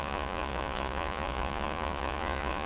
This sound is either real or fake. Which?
fake